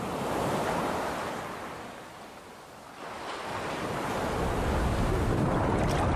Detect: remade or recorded recorded